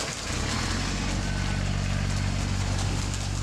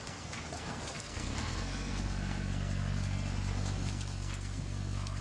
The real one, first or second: first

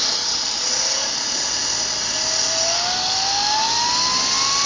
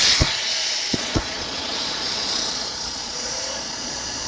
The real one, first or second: first